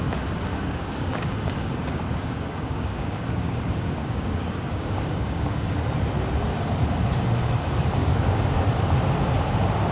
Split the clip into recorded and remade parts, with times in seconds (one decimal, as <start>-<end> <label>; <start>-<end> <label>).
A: 0.0-0.5 recorded; 0.5-5.7 remade; 5.7-8.0 recorded; 8.0-8.6 remade; 8.6-9.9 recorded